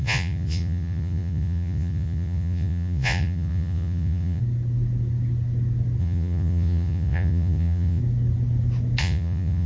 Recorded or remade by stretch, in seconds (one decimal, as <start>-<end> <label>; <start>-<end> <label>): 0.0-4.4 remade; 4.4-6.0 recorded; 6.0-8.0 remade; 8.0-9.0 recorded; 9.0-9.7 remade